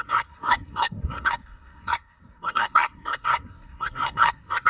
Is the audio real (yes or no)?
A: no